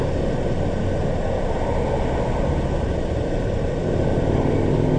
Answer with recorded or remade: recorded